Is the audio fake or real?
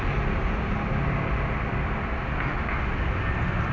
real